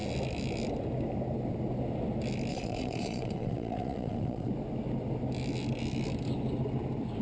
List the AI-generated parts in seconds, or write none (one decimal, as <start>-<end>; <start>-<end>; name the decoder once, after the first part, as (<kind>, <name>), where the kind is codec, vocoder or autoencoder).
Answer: 2.5-4.5 (vocoder, Vocos)